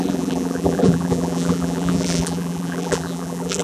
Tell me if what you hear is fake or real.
fake